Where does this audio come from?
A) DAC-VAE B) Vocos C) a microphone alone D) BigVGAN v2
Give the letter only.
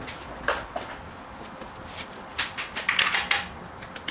C